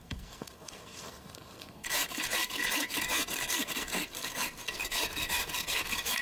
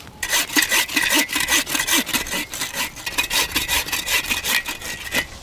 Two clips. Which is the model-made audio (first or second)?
first